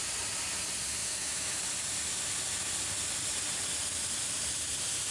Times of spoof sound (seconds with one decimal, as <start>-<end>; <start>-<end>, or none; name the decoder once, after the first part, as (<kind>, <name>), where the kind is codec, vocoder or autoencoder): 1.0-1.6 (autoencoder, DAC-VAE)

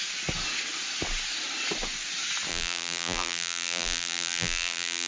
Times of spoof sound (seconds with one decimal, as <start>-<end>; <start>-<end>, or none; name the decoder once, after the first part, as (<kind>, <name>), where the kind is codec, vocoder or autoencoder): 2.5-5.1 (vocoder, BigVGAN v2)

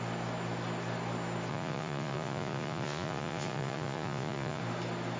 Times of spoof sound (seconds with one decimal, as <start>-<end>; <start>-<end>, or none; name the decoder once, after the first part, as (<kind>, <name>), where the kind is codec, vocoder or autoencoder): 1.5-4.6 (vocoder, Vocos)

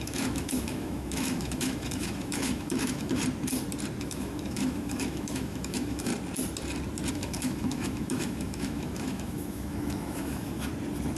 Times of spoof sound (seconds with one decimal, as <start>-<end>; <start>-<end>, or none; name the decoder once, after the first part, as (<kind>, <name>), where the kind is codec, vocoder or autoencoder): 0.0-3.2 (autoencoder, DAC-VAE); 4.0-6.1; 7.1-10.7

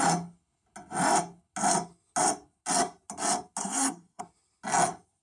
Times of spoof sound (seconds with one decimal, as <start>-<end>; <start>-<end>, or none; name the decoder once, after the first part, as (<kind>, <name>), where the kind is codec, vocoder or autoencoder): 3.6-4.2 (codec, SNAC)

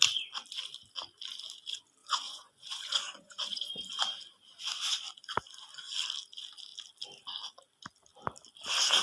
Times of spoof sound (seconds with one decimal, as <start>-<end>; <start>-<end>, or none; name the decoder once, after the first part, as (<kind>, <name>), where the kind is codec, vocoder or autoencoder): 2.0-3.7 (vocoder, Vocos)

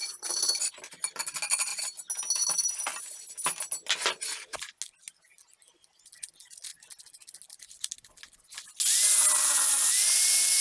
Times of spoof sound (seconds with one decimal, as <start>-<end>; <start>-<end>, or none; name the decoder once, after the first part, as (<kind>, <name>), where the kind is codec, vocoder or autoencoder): none